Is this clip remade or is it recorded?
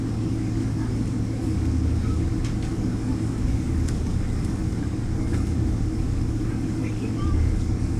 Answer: remade